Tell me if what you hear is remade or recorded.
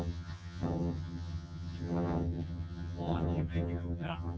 remade